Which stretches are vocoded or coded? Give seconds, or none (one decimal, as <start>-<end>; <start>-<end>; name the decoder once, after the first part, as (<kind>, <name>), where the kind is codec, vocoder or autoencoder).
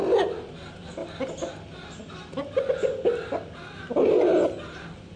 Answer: none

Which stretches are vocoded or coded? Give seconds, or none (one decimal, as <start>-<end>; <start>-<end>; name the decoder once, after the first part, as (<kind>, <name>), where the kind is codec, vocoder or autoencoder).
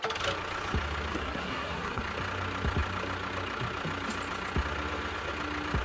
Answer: 1.1-2.0 (codec, SNAC)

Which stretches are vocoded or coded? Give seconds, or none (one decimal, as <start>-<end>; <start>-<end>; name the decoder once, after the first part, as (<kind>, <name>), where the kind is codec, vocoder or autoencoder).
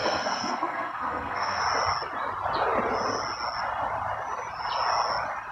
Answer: 0.0-1.6 (codec, SNAC)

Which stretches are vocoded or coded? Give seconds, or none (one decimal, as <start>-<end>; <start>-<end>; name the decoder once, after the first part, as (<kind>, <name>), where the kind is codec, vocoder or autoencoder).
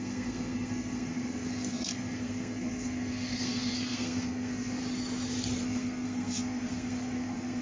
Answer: 0.0-4.8 (codec, SNAC); 5.6-7.6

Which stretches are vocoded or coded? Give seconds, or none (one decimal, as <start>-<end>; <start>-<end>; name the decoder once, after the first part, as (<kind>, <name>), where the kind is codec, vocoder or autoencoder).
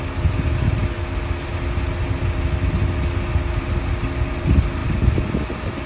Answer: none